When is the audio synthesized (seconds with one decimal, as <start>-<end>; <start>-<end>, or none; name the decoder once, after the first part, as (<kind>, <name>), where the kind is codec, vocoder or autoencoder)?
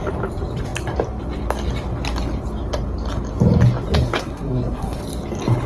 4.0-5.0 (codec, SNAC)